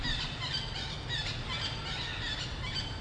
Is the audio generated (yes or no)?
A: no